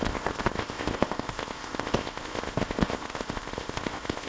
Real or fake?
fake